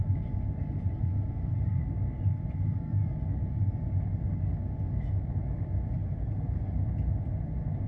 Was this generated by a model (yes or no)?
no